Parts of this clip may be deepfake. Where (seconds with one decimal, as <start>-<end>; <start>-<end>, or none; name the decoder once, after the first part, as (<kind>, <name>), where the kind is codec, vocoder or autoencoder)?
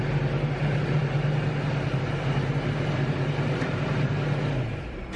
none